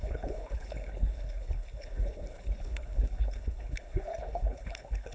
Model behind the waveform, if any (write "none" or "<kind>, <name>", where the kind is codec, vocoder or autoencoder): codec, HILCodec